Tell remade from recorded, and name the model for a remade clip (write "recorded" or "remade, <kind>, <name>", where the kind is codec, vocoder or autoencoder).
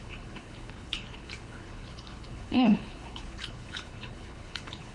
remade, codec, HILCodec